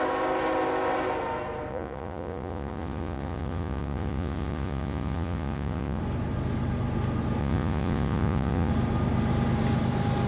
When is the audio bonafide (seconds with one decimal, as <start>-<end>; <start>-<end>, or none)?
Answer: 0.0-1.7; 6.0-7.4; 8.7-10.3